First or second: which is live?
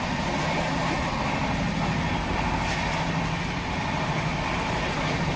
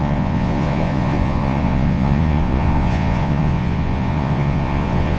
first